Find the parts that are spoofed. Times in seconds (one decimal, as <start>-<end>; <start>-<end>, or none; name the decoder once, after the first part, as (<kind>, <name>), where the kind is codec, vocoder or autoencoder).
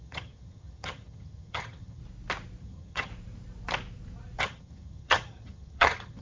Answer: 0.0-2.0 (vocoder, HiFi-GAN); 2.6-3.1; 4.4-6.2